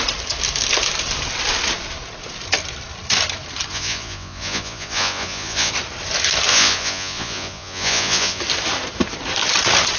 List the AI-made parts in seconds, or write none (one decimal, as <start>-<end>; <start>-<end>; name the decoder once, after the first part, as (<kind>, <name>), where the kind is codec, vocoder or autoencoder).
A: 3.7-5.7 (vocoder, Vocos); 6.5-8.4